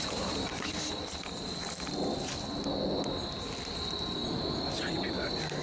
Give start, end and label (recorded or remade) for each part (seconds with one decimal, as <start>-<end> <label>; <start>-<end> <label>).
0.0-5.6 recorded